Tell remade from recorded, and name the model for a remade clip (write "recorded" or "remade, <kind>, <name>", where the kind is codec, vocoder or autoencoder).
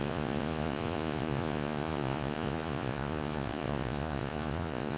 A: remade, vocoder, Vocos